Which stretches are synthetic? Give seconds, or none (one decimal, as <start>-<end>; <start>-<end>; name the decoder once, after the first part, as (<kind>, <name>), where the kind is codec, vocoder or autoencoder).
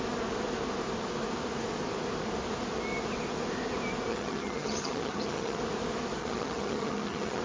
4.1-5.6 (vocoder, HiFi-GAN); 6.2-7.4